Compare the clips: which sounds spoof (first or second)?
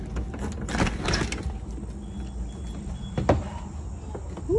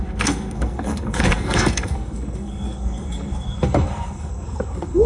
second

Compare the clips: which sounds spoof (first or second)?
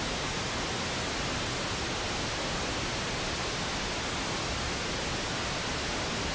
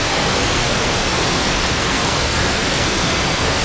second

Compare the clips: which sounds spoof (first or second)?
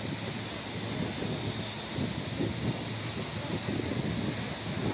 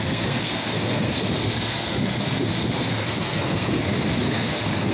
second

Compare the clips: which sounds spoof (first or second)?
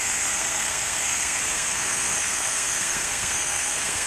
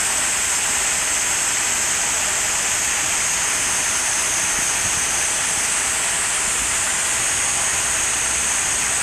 first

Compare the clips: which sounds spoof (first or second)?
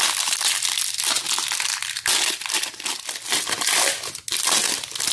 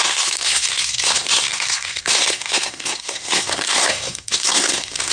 second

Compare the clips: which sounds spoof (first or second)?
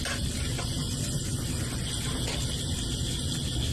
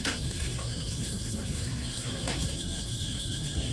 second